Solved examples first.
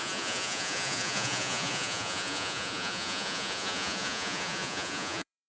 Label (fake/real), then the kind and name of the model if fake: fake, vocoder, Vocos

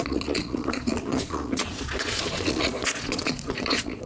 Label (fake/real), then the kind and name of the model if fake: fake, vocoder, Vocos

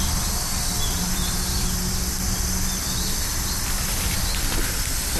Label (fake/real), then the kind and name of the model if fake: real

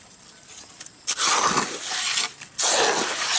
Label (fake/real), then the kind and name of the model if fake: real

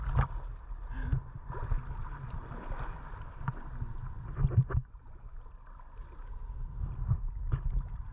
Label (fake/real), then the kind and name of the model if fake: real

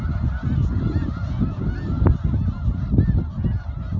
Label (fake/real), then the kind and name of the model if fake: real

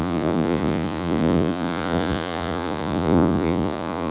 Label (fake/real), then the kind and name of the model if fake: fake, vocoder, Vocos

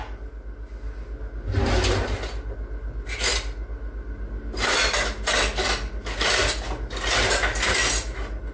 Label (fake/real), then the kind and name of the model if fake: real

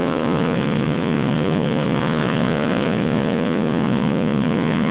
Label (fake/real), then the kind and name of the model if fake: fake, vocoder, Vocos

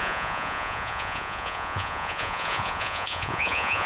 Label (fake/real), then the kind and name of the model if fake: fake, vocoder, Vocos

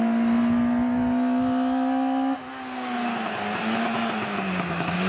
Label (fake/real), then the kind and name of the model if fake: real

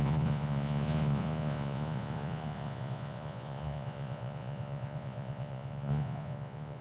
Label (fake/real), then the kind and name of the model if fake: fake, vocoder, Vocos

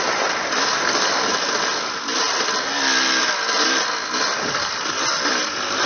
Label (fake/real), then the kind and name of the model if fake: real